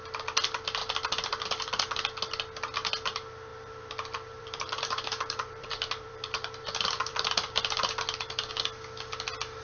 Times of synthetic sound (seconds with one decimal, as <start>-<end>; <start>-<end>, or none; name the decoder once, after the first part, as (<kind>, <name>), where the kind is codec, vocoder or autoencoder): 0.8-1.8 (vocoder, BigVGAN v2); 3.5-8.5

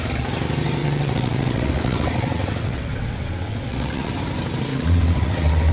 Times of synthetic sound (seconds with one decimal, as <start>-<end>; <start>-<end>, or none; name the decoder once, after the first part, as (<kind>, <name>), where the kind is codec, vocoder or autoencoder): 0.8-4.1 (vocoder, WaveNeXt); 4.7-5.7